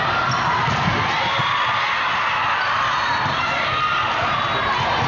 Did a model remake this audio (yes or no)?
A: no